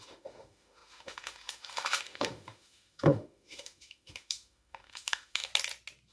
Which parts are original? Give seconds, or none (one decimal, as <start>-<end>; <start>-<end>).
5.5-6.1